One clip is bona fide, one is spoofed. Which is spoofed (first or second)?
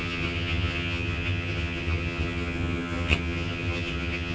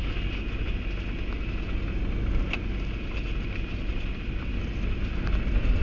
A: first